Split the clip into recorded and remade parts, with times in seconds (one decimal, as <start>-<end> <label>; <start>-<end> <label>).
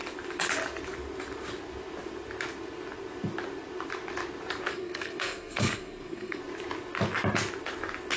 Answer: 0.0-4.7 recorded; 4.7-6.4 remade; 6.4-8.2 recorded